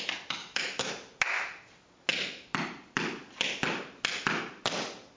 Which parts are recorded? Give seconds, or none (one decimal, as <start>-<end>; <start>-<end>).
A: 0.0-0.4; 0.9-5.2